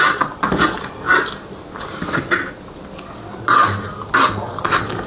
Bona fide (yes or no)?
yes